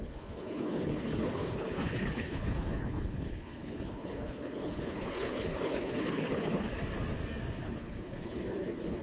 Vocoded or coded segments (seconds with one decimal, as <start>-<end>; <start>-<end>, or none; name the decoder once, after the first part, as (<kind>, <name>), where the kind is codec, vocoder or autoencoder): 0.0-6.7 (codec, HILCodec); 7.6-9.0